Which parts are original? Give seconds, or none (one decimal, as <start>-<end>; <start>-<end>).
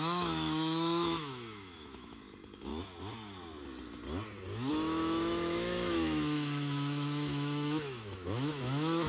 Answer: 2.7-4.7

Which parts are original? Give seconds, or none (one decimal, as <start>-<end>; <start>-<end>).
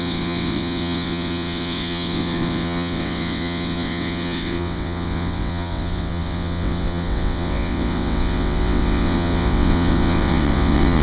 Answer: none